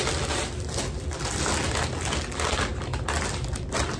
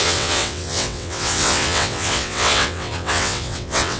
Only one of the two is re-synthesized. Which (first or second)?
second